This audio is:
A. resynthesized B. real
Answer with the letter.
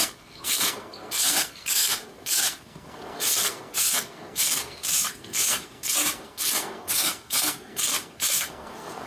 A